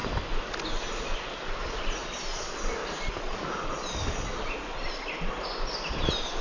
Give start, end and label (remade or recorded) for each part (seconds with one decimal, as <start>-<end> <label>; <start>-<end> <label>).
0.0-6.4 recorded